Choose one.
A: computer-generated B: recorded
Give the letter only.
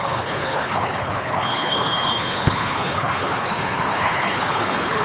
A